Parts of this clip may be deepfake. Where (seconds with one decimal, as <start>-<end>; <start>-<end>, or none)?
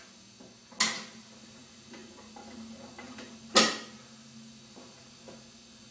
none